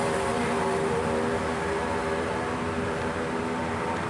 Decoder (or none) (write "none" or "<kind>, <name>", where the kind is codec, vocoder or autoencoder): vocoder, BigVGAN v2